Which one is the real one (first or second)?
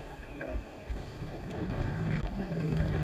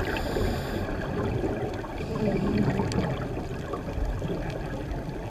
second